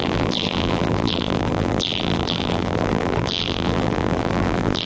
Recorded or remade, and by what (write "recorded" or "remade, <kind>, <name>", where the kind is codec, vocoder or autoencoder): remade, vocoder, BigVGAN v2